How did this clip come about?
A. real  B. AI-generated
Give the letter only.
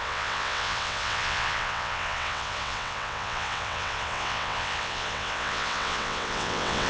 B